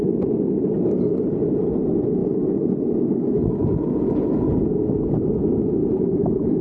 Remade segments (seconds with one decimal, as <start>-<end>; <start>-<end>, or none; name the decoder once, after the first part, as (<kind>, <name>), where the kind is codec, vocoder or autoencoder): 5.8-6.6 (vocoder, BigVGAN v2)